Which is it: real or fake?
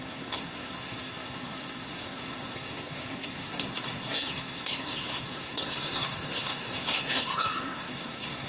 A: fake